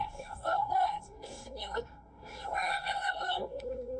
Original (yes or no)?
no